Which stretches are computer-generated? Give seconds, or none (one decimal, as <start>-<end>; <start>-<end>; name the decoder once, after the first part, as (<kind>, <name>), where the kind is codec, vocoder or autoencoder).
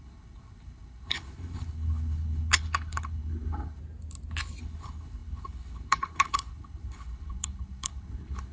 0.0-3.8 (codec, HILCodec); 4.6-8.5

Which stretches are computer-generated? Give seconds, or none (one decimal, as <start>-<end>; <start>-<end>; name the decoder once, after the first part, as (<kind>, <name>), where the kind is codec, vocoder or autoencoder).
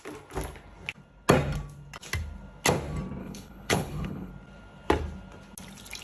3.2-4.3 (codec, HILCodec)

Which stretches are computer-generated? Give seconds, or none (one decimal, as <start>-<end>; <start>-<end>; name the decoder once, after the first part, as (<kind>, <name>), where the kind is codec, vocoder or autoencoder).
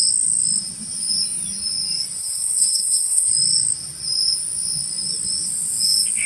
2.2-3.3 (codec, HILCodec)